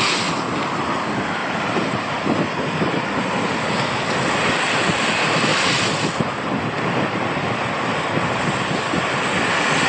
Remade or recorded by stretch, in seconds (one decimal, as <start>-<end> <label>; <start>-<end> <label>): 0.0-1.4 recorded; 1.4-3.6 remade; 3.6-9.9 recorded